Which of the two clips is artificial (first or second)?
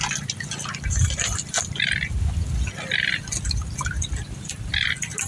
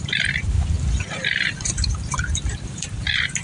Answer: second